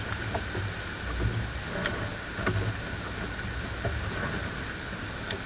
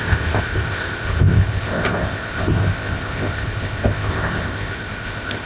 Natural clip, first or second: first